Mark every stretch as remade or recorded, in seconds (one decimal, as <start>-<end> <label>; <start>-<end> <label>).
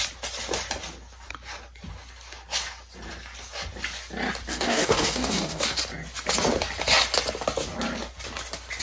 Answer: 0.0-4.5 recorded; 4.5-5.8 remade; 5.8-8.8 recorded